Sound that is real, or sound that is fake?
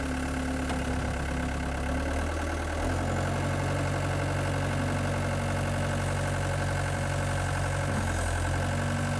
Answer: real